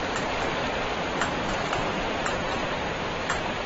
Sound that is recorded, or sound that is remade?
remade